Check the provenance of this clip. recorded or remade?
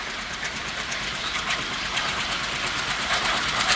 remade